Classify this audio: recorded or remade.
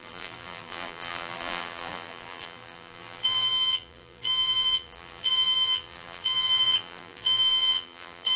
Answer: remade